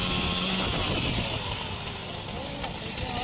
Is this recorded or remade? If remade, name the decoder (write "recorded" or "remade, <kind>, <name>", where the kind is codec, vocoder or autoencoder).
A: recorded